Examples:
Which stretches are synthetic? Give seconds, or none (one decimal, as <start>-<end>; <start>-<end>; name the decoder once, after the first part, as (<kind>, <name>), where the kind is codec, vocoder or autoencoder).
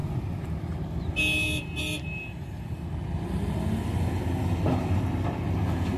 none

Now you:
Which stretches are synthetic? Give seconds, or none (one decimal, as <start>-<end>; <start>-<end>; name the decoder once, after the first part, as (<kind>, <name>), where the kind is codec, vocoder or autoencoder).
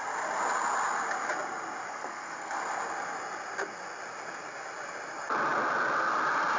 1.9-2.6 (codec, SNAC)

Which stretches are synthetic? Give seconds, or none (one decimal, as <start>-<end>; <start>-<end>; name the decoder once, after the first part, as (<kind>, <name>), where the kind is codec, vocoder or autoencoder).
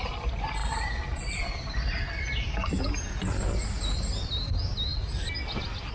none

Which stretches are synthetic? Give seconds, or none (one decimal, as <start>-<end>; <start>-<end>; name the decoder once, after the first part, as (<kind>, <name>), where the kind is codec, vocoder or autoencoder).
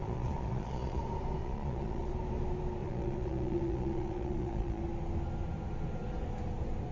0.0-1.0 (vocoder, Vocos); 1.4-2.1; 2.8-4.8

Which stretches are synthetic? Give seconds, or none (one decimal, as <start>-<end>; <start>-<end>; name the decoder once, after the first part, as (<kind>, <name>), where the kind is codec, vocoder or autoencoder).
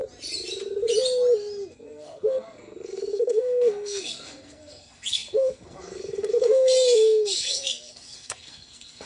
1.7-9.1 (codec, SNAC)